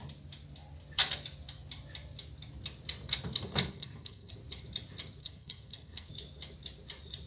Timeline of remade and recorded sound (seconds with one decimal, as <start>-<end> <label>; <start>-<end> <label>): 0.0-3.7 recorded; 3.7-4.3 remade; 4.3-5.2 recorded; 5.2-6.1 remade; 6.1-7.3 recorded